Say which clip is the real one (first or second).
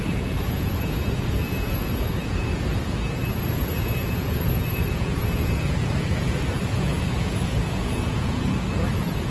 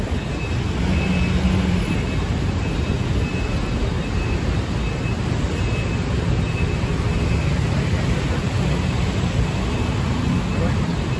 second